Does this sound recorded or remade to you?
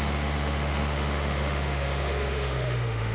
remade